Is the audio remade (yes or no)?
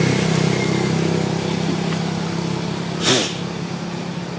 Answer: no